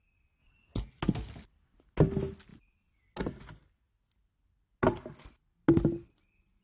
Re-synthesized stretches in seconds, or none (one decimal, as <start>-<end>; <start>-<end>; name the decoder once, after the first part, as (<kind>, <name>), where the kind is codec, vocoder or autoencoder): none